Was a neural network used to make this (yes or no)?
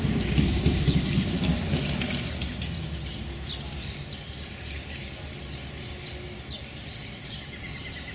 no